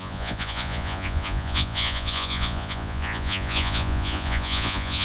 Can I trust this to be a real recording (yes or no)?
no